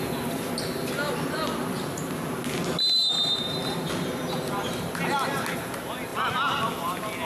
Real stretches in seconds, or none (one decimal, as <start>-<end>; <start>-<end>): 0.0-3.6; 4.9-7.2